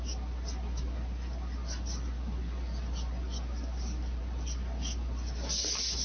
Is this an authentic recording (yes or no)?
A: yes